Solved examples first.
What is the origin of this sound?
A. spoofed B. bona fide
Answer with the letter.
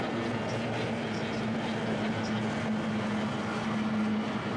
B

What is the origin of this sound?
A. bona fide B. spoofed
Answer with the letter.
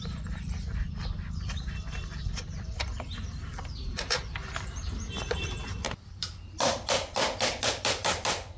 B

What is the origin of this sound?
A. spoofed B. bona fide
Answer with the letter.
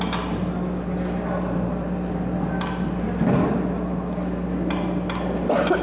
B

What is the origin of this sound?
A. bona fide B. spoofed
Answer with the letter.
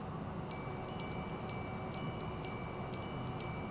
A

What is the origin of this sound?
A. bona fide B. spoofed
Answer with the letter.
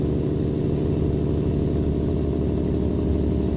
A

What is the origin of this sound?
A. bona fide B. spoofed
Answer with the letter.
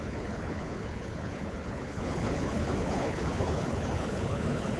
B